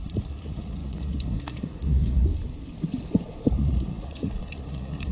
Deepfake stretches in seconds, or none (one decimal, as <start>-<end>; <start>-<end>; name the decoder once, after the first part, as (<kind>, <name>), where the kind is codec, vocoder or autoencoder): 0.0-2.3 (vocoder, Vocos); 3.5-5.1